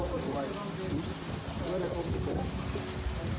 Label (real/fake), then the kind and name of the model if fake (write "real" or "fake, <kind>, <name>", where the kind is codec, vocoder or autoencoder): real